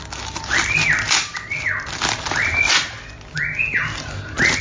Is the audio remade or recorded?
recorded